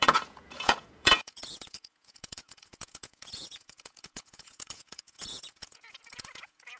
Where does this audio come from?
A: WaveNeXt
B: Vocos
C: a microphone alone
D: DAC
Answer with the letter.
B